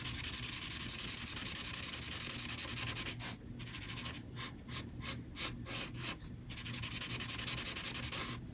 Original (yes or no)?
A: yes